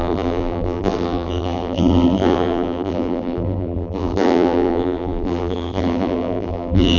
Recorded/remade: remade